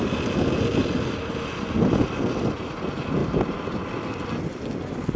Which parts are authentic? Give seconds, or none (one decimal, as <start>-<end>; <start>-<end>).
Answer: 0.0-0.8; 2.8-3.2; 3.9-5.2